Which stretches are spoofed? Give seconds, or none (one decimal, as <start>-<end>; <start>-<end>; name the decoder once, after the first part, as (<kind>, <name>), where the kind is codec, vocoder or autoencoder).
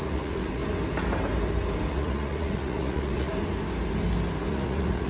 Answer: 0.0-0.6 (vocoder, Vocos); 1.9-3.3; 4.5-5.1